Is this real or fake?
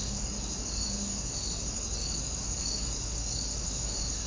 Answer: fake